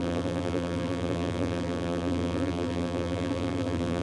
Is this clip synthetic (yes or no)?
yes